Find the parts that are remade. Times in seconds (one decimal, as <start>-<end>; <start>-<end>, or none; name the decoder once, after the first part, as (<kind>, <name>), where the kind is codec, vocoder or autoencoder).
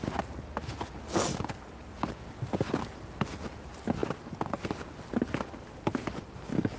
1.3-1.8 (vocoder, BigVGAN v2)